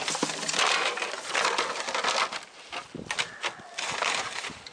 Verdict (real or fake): real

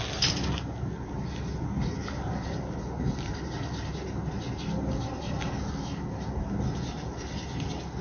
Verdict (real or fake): real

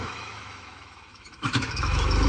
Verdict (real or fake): fake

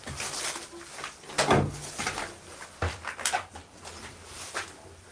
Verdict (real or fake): real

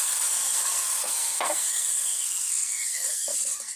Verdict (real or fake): fake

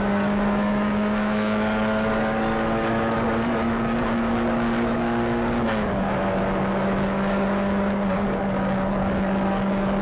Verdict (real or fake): fake